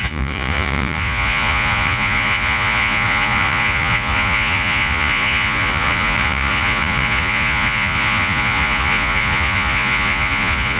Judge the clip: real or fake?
fake